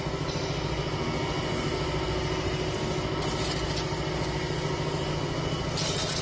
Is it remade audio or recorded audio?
recorded